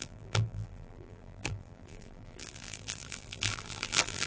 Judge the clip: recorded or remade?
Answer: remade